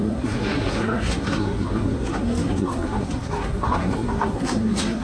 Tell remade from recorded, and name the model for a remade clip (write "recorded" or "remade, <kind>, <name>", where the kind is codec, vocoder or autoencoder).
remade, codec, SNAC